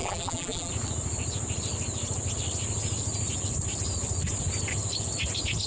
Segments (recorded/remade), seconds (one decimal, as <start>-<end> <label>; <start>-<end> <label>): 0.0-0.7 remade; 0.7-5.7 recorded